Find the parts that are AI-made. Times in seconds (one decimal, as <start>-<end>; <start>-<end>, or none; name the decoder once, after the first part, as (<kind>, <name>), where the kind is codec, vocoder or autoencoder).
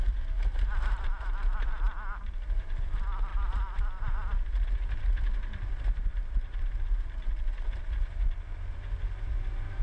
0.0-9.8 (vocoder, BigVGAN v2)